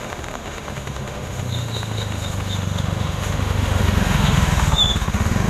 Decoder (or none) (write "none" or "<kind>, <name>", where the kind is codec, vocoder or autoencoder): autoencoder, DAC-VAE